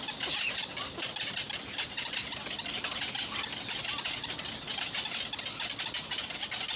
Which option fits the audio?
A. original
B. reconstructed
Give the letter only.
A